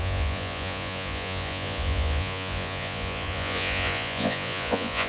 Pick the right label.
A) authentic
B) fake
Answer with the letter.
B